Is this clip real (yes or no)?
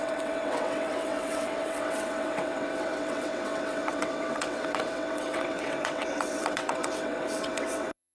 no